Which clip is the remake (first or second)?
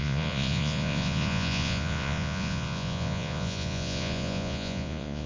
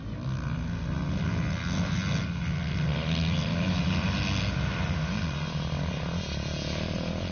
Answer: first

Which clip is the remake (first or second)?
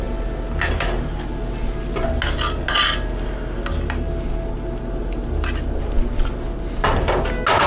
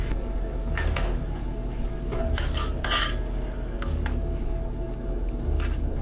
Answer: second